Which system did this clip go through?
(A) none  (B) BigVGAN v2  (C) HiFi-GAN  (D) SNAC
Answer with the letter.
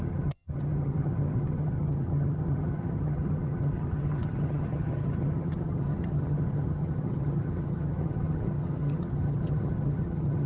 C